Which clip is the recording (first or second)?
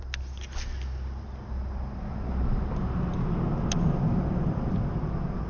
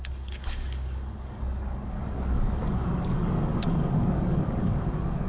first